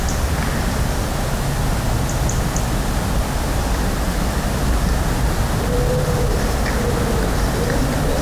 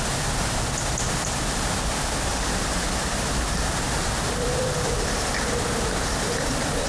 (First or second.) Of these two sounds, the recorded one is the first